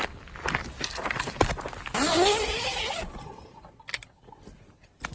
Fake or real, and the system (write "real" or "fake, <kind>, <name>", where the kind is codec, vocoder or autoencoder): real